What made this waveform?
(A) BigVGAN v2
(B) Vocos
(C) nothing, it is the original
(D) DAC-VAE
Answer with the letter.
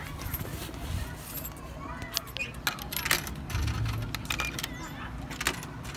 C